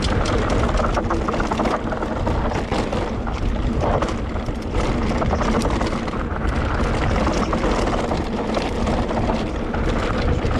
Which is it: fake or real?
real